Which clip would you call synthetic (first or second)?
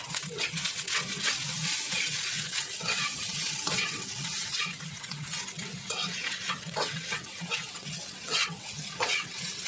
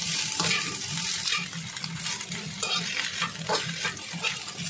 first